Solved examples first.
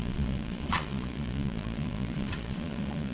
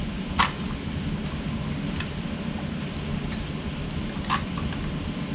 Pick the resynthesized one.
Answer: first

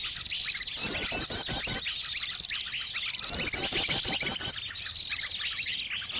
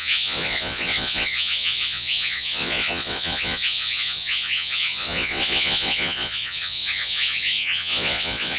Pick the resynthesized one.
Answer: second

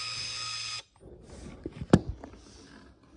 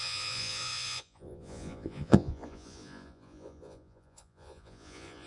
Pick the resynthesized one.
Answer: second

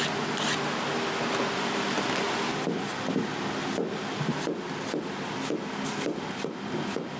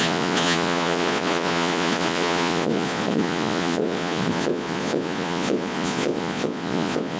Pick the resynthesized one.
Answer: second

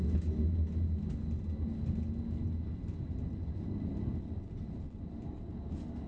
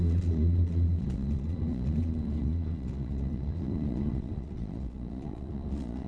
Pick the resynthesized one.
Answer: second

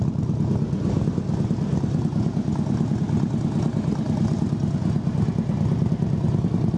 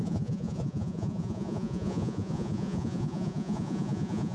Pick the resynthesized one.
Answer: second